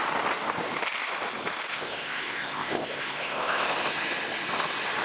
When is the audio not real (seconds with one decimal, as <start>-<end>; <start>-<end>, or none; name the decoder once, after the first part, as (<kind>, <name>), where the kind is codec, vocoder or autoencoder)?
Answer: 1.7-3.7 (codec, ZipCodec)